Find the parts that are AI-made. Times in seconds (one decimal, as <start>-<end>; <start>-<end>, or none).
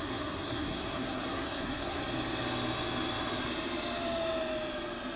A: 0.0-2.0